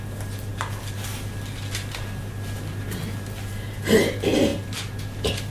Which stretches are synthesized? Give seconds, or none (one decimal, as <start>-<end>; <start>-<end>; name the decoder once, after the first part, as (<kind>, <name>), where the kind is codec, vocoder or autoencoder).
none